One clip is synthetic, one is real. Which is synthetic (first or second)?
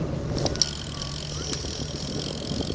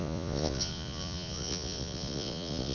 second